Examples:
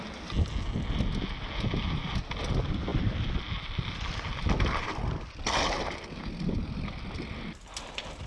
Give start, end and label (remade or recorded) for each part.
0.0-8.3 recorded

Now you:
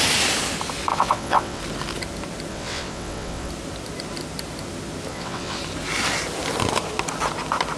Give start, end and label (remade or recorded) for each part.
0.0-0.9 recorded; 0.9-1.6 remade; 1.6-2.5 recorded; 2.5-3.5 remade; 3.5-5.1 recorded; 5.1-5.6 remade; 5.6-7.8 recorded

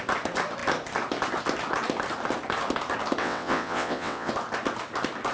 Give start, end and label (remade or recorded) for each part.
0.0-3.2 recorded; 3.2-4.3 remade; 4.3-5.3 recorded

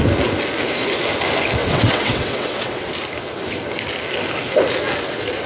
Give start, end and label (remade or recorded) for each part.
0.0-1.6 recorded; 1.6-2.9 remade; 2.9-5.5 recorded

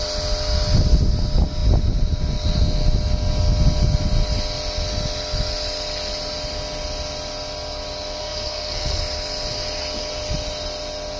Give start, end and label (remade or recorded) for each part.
0.0-8.2 recorded; 8.2-9.0 remade; 9.0-11.2 recorded

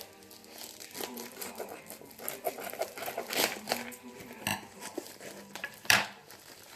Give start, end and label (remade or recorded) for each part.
0.0-4.5 recorded; 4.5-6.8 remade

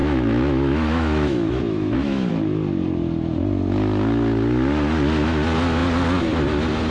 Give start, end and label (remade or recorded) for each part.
0.0-2.3 remade; 2.3-6.9 recorded